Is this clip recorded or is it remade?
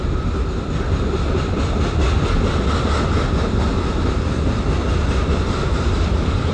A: recorded